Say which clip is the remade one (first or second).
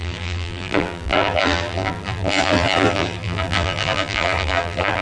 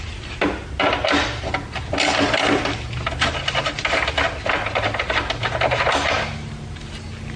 first